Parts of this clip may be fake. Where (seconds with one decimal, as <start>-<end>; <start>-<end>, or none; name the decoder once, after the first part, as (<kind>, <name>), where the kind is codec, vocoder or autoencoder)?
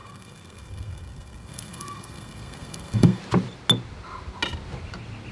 0.0-3.2 (codec, SNAC)